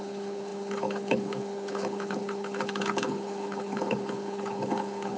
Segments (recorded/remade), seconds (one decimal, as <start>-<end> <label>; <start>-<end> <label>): 0.0-5.2 remade